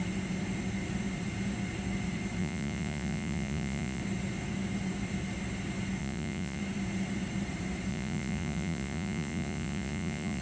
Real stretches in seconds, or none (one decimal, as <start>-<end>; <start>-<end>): 0.0-2.4; 4.0-6.0; 6.6-7.9